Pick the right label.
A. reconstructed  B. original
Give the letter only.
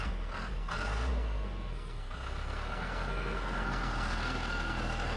A